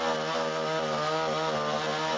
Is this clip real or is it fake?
real